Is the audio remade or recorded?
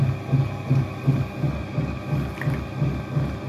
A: recorded